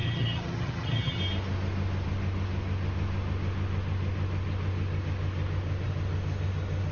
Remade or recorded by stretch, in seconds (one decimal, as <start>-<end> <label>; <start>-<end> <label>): 0.0-1.2 remade; 1.2-6.9 recorded